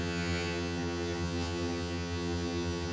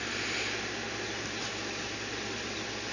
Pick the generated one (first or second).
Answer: first